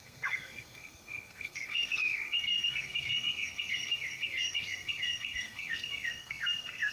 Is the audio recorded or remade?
remade